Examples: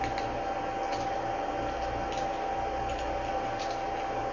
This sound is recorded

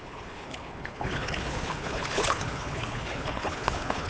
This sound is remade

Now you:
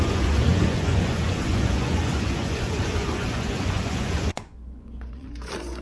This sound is remade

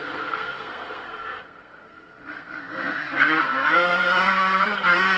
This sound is remade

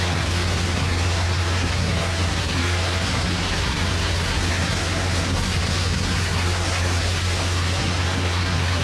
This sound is remade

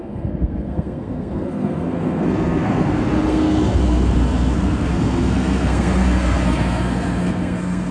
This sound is remade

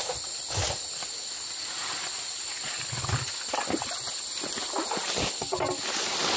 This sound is recorded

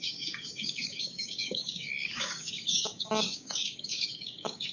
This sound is remade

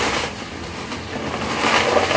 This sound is recorded